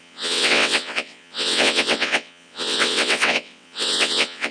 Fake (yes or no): yes